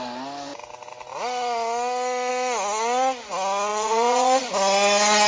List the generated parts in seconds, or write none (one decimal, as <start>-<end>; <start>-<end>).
3.7-4.5